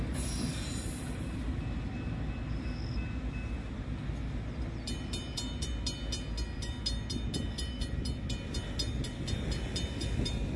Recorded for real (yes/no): yes